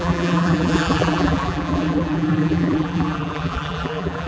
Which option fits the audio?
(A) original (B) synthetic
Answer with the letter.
B